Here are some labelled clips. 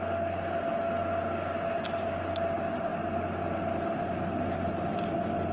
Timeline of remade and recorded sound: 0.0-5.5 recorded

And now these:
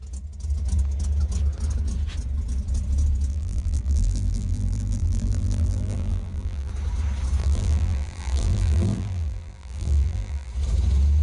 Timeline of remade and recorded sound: 0.0-3.3 recorded; 3.3-6.7 remade; 6.7-7.4 recorded; 7.4-10.5 remade; 10.5-11.2 recorded

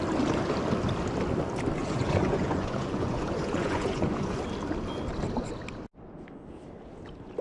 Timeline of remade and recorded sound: 0.0-1.8 recorded; 1.8-4.4 remade; 4.4-7.4 recorded

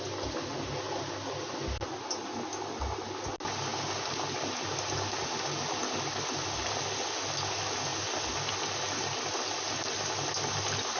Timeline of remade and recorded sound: 0.0-11.0 recorded

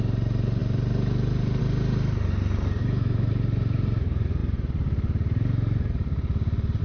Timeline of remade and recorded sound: 0.0-2.8 recorded; 2.8-3.3 remade; 3.3-6.8 recorded

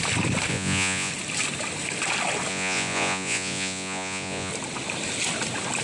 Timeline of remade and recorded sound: 0.0-0.5 recorded; 0.5-1.1 remade; 1.1-2.5 recorded; 2.5-4.5 remade; 4.5-5.8 recorded